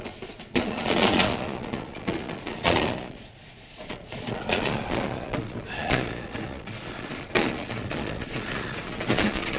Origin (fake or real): fake